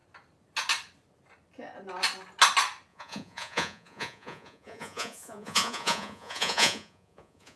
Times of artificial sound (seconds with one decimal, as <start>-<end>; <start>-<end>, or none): 2.9-7.6